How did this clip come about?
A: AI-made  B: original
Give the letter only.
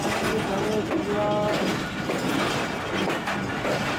B